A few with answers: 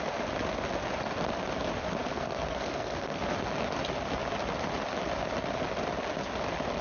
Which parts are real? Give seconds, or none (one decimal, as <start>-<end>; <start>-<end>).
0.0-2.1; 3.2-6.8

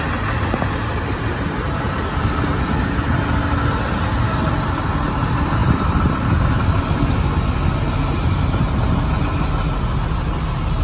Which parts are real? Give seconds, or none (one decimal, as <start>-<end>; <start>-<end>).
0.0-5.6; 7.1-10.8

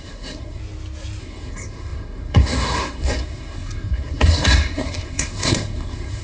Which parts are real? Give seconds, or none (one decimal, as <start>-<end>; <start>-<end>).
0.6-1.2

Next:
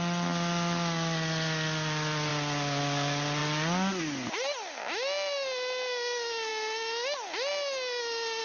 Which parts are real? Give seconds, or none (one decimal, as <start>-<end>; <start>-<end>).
0.0-8.4